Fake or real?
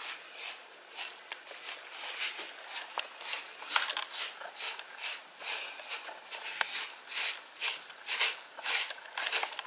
real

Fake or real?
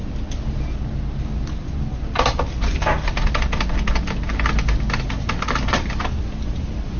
real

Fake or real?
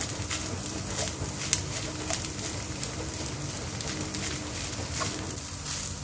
real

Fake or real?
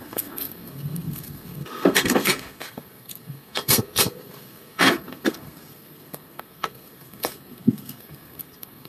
fake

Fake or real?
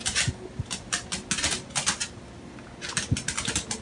real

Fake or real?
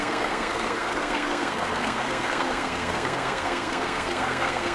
fake